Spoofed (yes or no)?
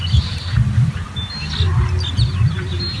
no